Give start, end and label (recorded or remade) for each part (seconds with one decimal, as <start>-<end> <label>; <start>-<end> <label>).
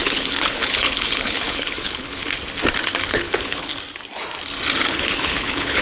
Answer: 0.0-2.2 remade; 2.2-3.1 recorded; 3.1-3.7 remade; 3.7-4.9 recorded; 4.9-5.8 remade